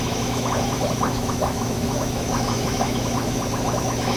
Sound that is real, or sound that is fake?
fake